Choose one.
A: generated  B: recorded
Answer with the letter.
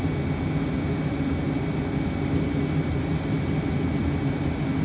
B